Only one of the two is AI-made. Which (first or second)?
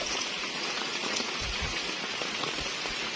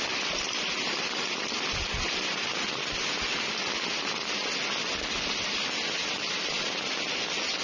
first